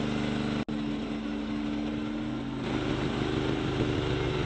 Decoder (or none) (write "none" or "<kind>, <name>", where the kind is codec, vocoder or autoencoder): none